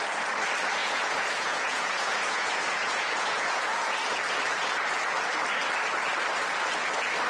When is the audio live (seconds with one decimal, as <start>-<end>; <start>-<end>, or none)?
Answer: 0.0-0.8; 4.0-7.3